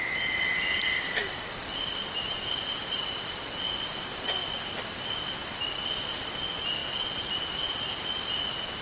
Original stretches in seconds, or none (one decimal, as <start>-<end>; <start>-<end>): 0.0-8.8